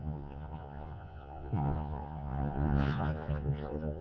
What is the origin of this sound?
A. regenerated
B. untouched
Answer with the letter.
A